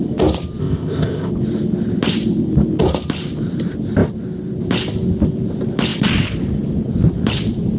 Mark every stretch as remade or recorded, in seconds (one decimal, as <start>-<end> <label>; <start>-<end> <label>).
0.0-0.6 recorded; 0.6-1.3 remade; 1.3-7.8 recorded